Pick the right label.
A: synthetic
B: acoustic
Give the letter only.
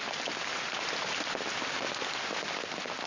B